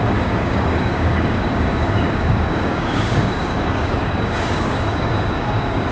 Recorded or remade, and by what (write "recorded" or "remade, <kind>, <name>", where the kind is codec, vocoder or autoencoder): remade, codec, DAC